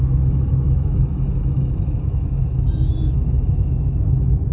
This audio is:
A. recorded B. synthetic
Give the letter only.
B